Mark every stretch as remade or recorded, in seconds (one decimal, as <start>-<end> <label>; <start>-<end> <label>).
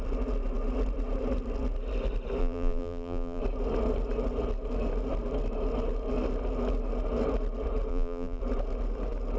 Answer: 0.0-2.4 recorded; 2.4-3.4 remade; 3.4-7.9 recorded; 7.9-8.4 remade; 8.4-9.4 recorded